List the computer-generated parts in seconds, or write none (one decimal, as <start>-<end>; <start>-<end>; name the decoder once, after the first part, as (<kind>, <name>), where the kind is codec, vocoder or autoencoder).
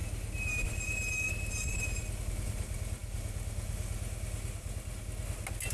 none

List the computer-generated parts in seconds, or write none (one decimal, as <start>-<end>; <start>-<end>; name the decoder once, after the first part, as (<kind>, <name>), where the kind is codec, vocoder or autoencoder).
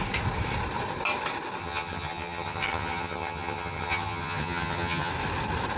1.6-5.1 (vocoder, HiFi-GAN)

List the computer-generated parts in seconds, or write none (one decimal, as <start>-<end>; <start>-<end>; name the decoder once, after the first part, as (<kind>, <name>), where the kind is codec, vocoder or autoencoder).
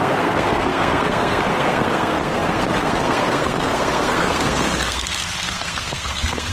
0.0-6.5 (codec, SNAC)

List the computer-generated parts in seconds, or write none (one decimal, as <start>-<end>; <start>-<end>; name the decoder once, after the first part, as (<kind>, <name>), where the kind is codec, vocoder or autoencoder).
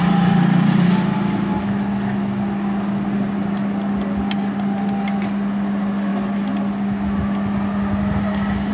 none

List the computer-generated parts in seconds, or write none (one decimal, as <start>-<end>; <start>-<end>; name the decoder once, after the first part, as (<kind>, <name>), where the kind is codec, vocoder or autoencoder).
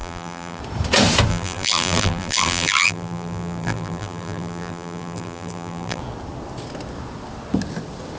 0.0-0.6 (vocoder, BigVGAN v2); 1.3-6.0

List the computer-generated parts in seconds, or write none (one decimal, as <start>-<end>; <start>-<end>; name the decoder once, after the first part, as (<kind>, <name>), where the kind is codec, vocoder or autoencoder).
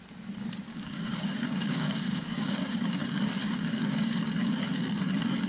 0.7-3.0 (codec, DAC); 3.4-4.2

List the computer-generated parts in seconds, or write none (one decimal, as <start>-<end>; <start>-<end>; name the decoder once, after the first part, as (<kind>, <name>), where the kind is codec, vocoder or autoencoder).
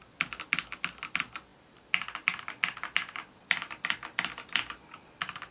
none